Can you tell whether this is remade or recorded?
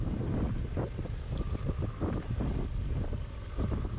recorded